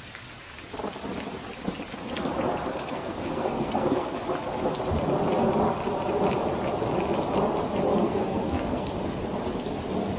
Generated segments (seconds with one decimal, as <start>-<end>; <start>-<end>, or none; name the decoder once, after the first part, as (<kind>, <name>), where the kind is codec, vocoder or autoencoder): 2.7-4.2 (codec, SNAC); 8.0-9.2